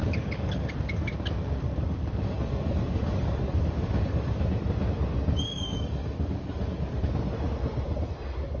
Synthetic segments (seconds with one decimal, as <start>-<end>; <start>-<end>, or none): 0.0-4.4; 5.5-7.0